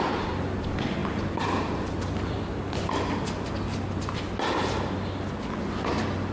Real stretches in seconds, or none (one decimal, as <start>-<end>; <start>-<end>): 0.0-1.0; 2.0-6.3